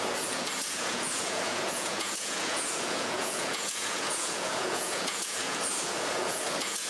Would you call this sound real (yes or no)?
no